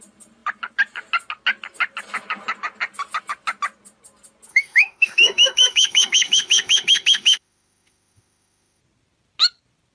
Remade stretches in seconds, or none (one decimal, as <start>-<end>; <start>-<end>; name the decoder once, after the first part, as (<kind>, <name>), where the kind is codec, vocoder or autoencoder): 4.5-8.8 (autoencoder, DAC-VAE)